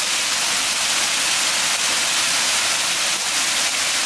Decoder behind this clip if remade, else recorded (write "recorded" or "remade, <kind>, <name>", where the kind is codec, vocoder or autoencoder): recorded